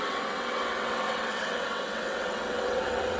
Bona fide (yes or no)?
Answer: no